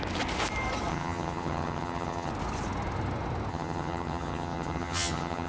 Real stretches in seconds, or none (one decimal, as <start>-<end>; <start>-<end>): 0.0-0.9; 2.3-3.5